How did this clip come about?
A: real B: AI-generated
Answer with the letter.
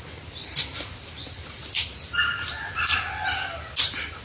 B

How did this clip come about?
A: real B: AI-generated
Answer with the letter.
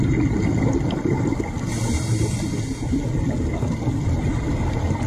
A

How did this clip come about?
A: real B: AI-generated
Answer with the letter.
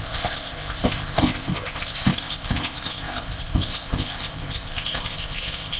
B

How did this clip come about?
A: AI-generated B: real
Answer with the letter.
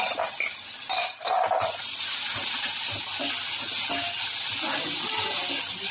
B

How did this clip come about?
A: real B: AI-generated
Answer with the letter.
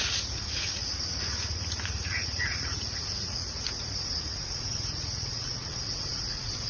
B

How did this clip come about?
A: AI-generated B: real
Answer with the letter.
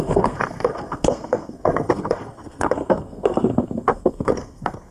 A